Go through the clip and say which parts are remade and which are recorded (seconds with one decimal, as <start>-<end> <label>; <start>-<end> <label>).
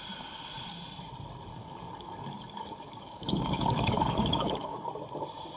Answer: 0.0-1.5 recorded; 1.5-4.9 remade; 4.9-5.6 recorded